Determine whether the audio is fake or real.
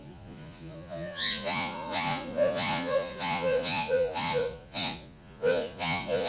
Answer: fake